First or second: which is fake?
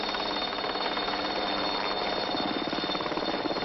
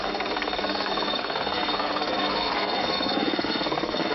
second